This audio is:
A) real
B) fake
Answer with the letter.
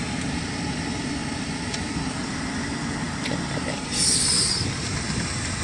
A